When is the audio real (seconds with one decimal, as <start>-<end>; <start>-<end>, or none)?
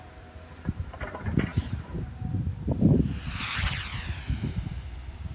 none